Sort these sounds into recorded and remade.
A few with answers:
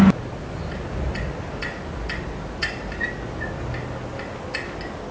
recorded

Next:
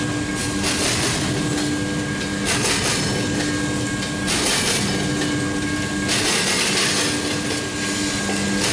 recorded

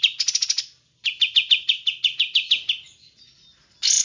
recorded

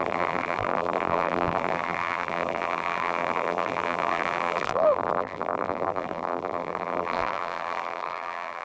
remade